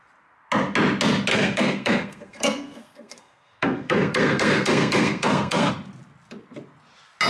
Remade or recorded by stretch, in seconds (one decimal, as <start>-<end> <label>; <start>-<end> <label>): 0.0-1.3 recorded; 1.3-5.7 remade; 5.7-7.3 recorded